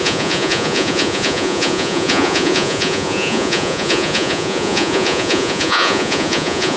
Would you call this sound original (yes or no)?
no